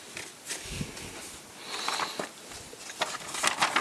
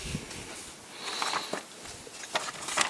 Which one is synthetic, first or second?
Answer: first